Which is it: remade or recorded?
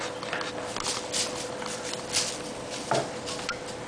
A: recorded